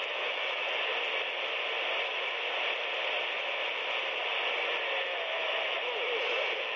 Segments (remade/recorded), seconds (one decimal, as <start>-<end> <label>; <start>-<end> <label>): 0.0-0.9 remade; 0.9-5.0 recorded; 5.0-6.8 remade